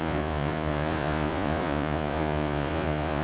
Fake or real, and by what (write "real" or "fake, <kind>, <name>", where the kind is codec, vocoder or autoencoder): fake, vocoder, Vocos